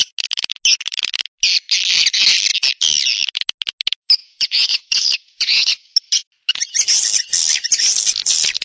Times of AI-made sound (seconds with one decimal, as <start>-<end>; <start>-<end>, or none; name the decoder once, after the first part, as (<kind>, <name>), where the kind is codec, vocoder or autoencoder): 4.2-5.9 (vocoder, Vocos)